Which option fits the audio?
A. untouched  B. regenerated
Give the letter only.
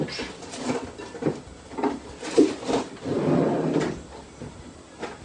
A